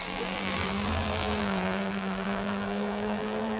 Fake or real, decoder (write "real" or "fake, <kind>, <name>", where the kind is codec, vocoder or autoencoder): fake, vocoder, BigVGAN v2